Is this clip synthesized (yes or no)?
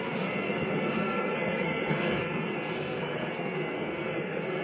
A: yes